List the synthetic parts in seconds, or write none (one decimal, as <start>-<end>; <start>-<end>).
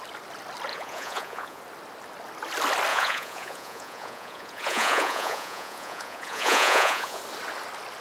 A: 0.7-1.6; 2.9-7.2